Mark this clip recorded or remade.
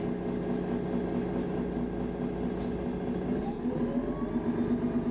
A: recorded